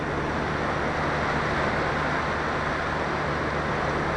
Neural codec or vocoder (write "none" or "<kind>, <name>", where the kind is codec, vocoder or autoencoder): none